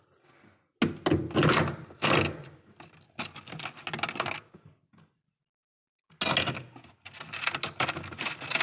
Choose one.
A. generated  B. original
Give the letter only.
B